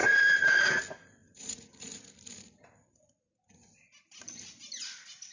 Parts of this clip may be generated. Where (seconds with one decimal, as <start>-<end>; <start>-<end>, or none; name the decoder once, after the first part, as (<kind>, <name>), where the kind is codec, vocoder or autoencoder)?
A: 0.0-0.7 (vocoder, Vocos); 1.2-2.0